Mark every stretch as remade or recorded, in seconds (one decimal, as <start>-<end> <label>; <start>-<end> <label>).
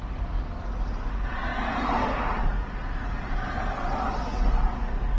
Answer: 0.0-5.2 recorded